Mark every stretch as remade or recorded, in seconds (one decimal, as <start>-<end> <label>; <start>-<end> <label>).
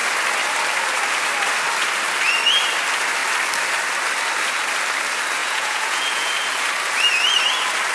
0.0-5.4 recorded; 5.4-6.3 remade; 6.3-7.9 recorded